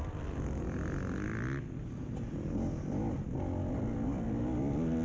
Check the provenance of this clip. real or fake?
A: real